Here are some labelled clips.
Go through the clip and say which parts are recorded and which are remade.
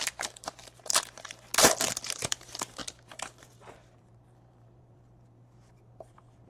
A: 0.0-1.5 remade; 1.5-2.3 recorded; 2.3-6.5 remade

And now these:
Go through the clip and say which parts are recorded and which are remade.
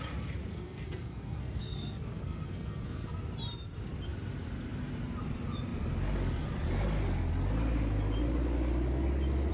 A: 0.0-0.5 recorded; 0.5-3.2 remade; 3.2-9.5 recorded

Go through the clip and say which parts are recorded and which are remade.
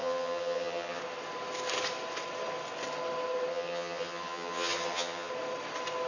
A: 0.0-1.0 remade; 1.0-3.5 recorded; 3.5-5.3 remade; 5.3-6.1 recorded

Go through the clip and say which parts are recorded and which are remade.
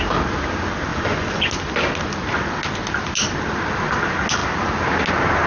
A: 0.0-0.9 recorded; 0.9-1.4 remade; 1.4-5.5 recorded